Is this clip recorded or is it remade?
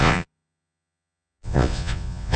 remade